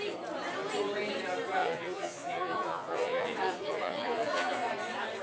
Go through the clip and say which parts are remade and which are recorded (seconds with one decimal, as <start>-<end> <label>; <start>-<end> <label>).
0.0-1.6 recorded; 1.6-4.7 remade; 4.7-5.2 recorded